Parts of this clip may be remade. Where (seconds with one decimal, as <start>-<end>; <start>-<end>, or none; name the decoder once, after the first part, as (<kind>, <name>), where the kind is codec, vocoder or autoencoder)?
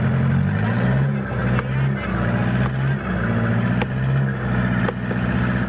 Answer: none